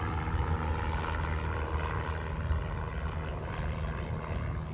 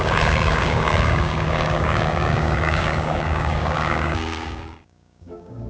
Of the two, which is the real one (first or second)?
first